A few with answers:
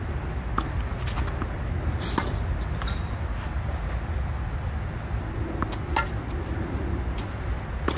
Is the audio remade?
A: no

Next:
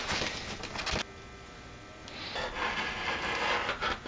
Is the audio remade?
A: no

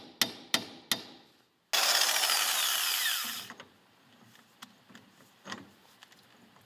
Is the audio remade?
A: no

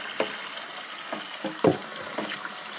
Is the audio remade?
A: no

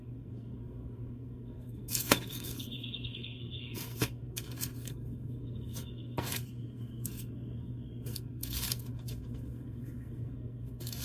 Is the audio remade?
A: yes